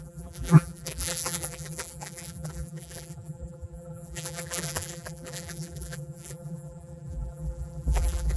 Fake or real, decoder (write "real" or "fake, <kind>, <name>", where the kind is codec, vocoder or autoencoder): fake, vocoder, BigVGAN v2